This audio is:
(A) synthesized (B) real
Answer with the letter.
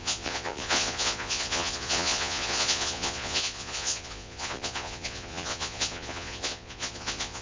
A